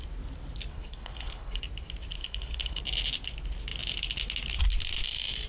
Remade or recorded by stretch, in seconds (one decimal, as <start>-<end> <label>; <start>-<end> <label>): 0.0-0.7 recorded; 0.7-1.6 remade; 1.6-2.2 recorded; 2.2-2.8 remade; 2.8-5.5 recorded